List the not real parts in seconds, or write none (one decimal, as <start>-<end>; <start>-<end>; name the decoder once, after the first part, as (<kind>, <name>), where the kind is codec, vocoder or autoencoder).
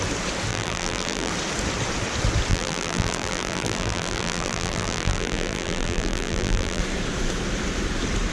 0.5-1.3 (vocoder, BigVGAN v2); 2.5-6.8